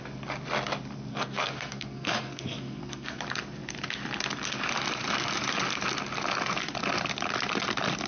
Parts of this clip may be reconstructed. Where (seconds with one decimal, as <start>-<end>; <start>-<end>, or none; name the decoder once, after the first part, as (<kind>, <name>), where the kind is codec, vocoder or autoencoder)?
1.1-3.2 (codec, SNAC)